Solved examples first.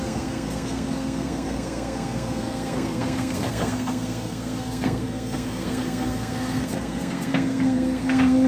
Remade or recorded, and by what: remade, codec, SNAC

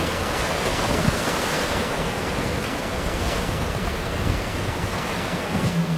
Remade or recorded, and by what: remade, codec, SNAC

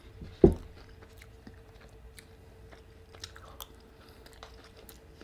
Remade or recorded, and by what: recorded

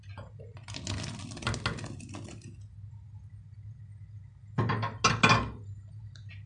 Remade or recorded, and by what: recorded